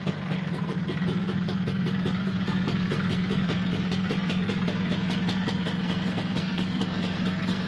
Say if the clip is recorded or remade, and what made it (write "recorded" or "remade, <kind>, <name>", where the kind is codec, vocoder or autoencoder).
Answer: remade, codec, SNAC